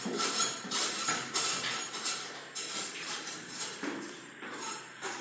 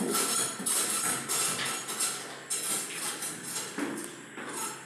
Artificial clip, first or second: first